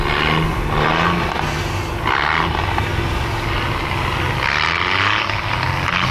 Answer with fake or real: real